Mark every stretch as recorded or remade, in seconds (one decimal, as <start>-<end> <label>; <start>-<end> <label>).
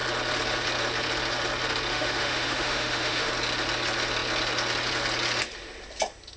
0.0-1.9 recorded; 1.9-3.3 remade; 3.3-6.4 recorded